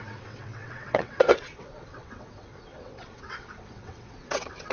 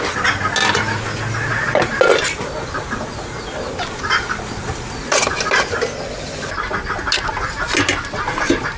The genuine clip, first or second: second